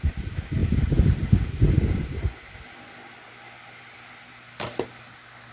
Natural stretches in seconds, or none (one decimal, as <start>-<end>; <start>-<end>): 0.0-5.5